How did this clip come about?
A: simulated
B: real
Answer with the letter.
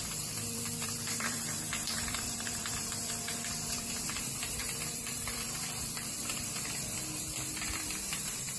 A